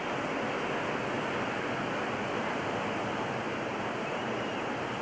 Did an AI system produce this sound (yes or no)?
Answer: no